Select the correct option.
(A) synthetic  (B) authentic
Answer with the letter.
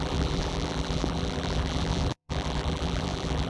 A